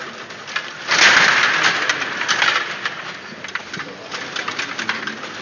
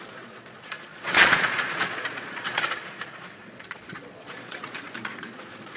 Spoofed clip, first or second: second